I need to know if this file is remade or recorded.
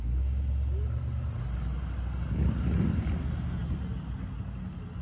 recorded